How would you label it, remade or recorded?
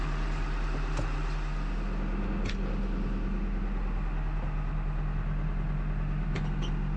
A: recorded